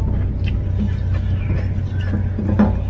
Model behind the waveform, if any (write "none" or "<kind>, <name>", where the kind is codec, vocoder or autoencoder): none